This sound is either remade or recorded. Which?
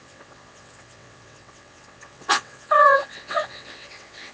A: remade